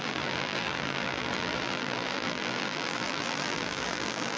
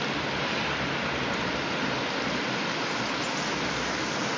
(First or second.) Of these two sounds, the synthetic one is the first